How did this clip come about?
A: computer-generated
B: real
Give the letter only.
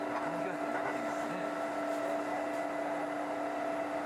B